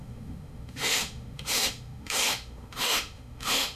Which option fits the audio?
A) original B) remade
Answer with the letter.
B